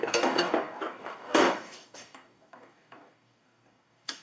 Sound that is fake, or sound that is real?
fake